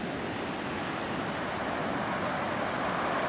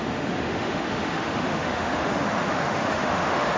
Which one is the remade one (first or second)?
second